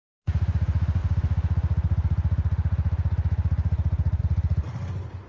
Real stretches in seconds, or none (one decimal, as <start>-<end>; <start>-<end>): 0.0-5.3